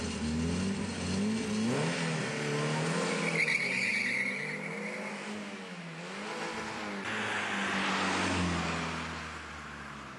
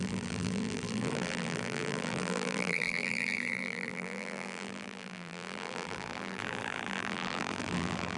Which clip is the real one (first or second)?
first